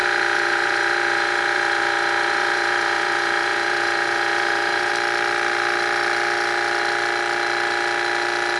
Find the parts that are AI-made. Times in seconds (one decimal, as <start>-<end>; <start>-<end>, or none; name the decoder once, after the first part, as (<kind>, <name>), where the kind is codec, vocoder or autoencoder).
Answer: 0.0-4.9 (vocoder, Vocos)